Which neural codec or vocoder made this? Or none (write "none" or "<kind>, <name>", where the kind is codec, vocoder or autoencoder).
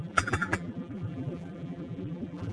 vocoder, BigVGAN v2